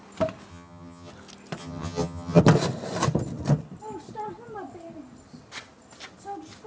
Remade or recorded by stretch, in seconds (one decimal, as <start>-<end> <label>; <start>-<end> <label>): 0.0-0.5 recorded; 0.5-1.1 remade; 1.1-1.6 recorded; 1.6-2.4 remade; 2.4-6.7 recorded